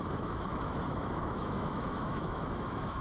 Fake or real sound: fake